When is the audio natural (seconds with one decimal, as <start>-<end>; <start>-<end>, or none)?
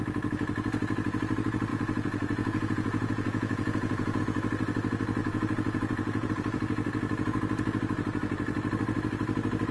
0.0-1.7; 4.2-5.2; 6.3-9.7